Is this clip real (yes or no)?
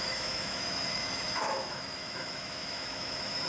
no